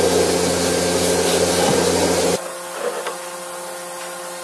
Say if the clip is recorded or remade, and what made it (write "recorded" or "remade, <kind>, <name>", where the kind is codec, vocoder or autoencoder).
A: recorded